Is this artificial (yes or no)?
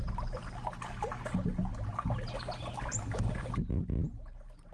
no